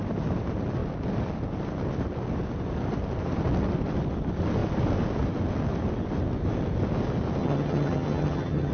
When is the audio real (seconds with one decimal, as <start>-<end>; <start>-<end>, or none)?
0.0-7.4